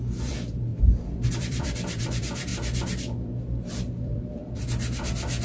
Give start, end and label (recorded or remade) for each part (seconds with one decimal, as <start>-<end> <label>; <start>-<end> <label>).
0.0-2.5 remade; 2.5-3.7 recorded; 3.7-4.4 remade; 4.4-5.4 recorded